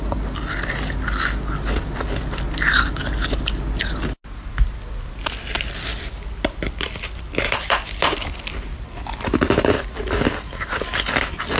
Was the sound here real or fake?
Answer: real